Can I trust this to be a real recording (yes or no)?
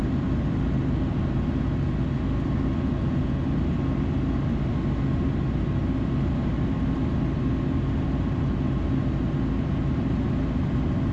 yes